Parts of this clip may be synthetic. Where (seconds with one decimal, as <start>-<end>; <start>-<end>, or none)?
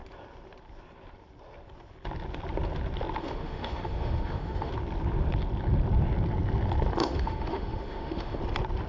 3.2-4.7; 7.0-8.4